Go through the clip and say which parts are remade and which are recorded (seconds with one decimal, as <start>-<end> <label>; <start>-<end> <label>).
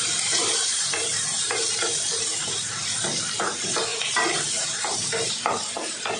0.0-2.8 remade; 2.8-3.4 recorded; 3.4-6.2 remade